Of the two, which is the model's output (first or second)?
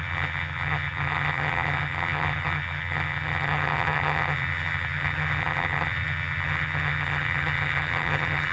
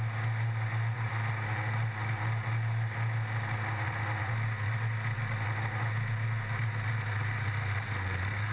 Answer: first